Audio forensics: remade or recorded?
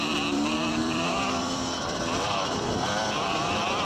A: remade